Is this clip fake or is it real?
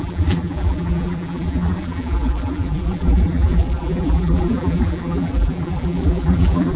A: fake